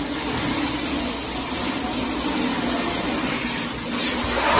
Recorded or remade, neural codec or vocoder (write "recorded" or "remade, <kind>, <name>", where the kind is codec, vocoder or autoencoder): recorded